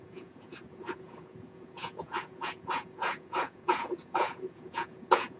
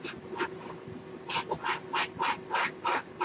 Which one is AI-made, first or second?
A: first